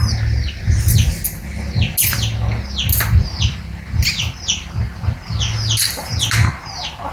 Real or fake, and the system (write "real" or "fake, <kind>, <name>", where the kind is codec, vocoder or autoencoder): real